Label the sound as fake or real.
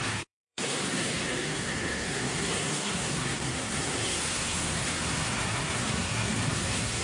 fake